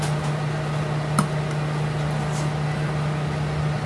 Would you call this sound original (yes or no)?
yes